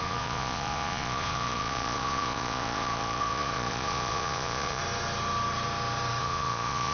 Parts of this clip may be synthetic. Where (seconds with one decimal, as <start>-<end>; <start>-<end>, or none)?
0.0-4.8; 6.2-6.9